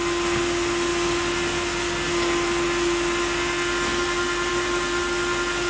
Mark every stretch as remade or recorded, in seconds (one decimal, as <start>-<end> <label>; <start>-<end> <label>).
0.0-5.7 recorded